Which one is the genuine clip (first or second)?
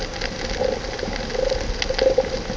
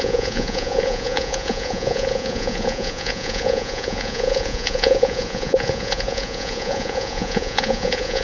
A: first